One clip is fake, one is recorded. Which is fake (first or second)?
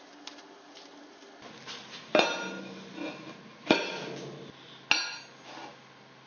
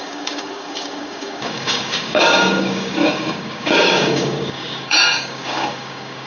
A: second